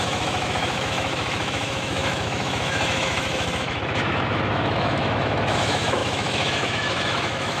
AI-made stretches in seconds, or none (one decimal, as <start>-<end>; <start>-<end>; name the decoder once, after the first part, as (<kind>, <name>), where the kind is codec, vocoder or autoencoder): 0.0-7.6 (autoencoder, DAC-VAE)